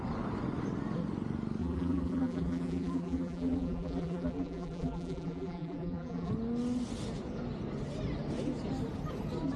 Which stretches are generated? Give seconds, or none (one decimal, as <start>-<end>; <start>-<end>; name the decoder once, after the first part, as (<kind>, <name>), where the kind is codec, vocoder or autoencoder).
1.6-6.3 (vocoder, BigVGAN v2)